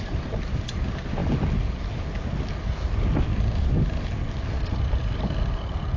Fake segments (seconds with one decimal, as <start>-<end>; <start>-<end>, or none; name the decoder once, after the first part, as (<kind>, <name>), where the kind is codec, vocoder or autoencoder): 0.0-1.2 (vocoder, BigVGAN v2); 4.8-6.0